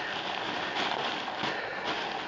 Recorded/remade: recorded